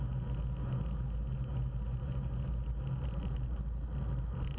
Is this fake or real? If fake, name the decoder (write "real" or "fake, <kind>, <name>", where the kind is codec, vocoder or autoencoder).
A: real